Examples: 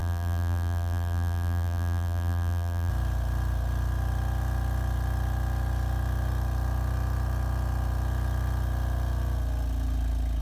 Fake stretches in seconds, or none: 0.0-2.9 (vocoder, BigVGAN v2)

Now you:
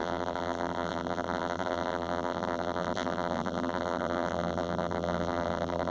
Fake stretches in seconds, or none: 0.0-5.9 (vocoder, BigVGAN v2)